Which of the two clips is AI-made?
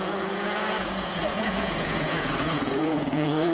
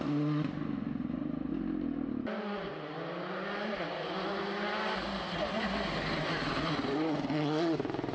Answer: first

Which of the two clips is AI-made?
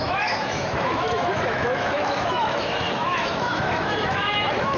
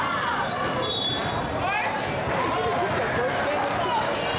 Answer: first